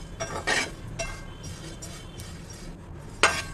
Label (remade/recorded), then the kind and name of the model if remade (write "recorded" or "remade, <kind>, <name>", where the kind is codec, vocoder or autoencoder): recorded